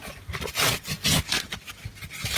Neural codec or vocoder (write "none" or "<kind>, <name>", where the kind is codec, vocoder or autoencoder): none